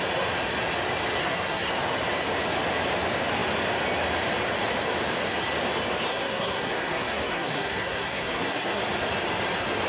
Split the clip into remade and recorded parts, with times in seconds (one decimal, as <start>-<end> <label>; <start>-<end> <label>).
0.0-1.2 recorded; 1.2-1.7 remade; 1.7-6.1 recorded; 6.1-8.8 remade; 8.8-9.9 recorded